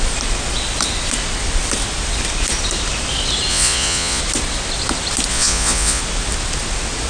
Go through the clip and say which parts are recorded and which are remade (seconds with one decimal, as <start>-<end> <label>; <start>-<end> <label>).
0.0-3.5 recorded; 3.5-4.2 remade; 4.2-5.3 recorded; 5.3-6.0 remade; 6.0-7.1 recorded